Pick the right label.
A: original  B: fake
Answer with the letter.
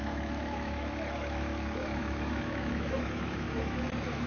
B